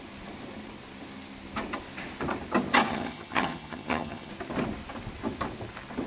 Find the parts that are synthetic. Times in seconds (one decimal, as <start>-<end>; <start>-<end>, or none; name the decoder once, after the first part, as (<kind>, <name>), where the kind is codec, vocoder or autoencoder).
2.9-4.3 (vocoder, HiFi-GAN)